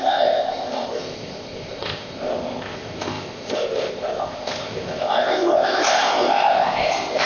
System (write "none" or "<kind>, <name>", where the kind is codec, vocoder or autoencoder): codec, ZipCodec